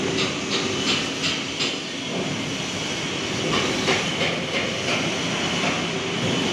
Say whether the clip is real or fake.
real